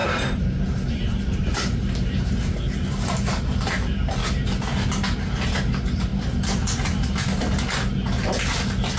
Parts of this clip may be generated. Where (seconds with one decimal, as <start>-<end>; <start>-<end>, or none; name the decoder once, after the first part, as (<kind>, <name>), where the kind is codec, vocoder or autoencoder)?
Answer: 0.0-2.3 (vocoder, BigVGAN v2)